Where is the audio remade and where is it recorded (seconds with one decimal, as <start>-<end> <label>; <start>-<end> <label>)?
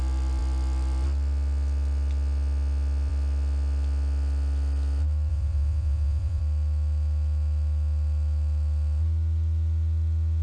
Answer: 0.0-5.3 recorded; 5.3-6.4 remade; 6.4-10.4 recorded